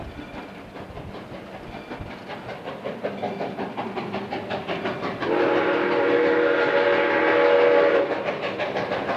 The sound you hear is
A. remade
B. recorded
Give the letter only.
B